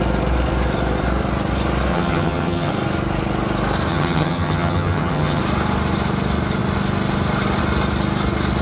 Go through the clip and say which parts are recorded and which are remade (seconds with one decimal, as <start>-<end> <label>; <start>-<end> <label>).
0.0-1.9 recorded; 1.9-2.7 remade; 2.7-3.9 recorded; 3.9-5.4 remade; 5.4-8.6 recorded

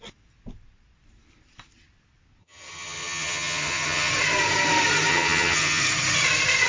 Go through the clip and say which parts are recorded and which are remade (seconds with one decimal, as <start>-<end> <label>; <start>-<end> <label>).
0.0-2.4 recorded; 2.4-4.1 remade; 4.1-5.1 recorded; 5.1-5.8 remade; 5.8-6.7 recorded

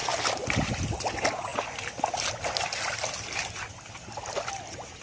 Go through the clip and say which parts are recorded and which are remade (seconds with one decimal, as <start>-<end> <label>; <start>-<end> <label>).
0.0-5.0 recorded

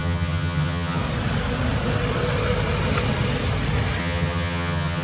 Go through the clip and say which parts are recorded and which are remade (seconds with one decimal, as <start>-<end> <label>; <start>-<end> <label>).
0.0-1.0 remade; 1.0-4.0 recorded; 4.0-5.0 remade

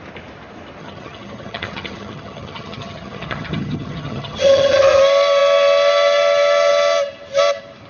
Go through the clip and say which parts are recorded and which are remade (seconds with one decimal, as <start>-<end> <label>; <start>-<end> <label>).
0.0-0.8 recorded; 0.8-5.0 remade; 5.0-7.9 recorded